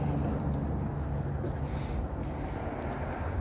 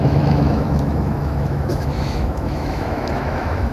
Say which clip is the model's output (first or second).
second